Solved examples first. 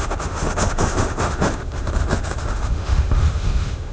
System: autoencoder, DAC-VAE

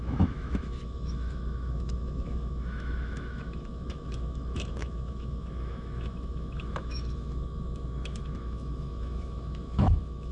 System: autoencoder, DAC-VAE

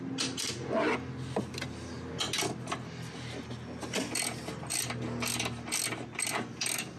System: none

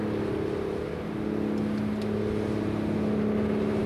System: none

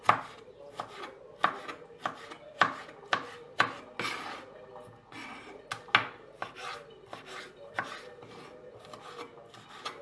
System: none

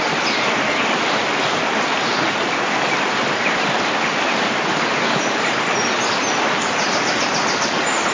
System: none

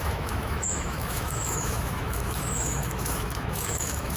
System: autoencoder, DAC-VAE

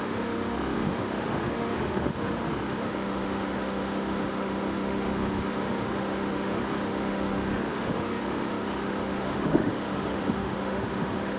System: autoencoder, DAC-VAE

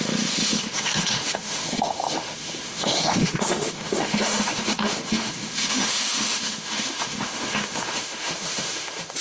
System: autoencoder, DAC-VAE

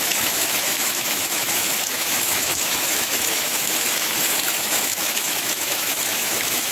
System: autoencoder, DAC-VAE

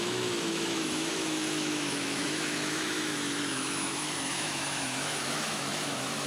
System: autoencoder, DAC-VAE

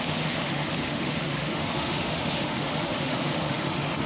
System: autoencoder, DAC-VAE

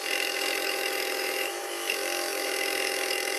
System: autoencoder, DAC-VAE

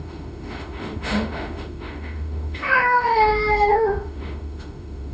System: autoencoder, DAC-VAE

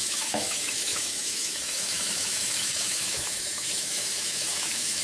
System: autoencoder, DAC-VAE